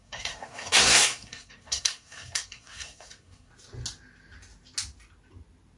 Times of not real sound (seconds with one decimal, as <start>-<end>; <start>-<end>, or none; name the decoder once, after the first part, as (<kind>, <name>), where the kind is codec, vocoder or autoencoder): 0.0-3.5 (codec, SNAC)